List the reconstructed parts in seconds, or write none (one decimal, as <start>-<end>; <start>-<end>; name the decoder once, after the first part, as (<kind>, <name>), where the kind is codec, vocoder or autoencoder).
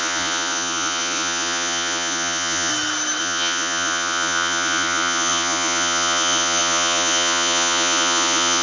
0.0-2.7 (vocoder, Vocos); 3.2-8.6